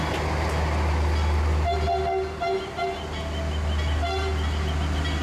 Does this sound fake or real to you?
real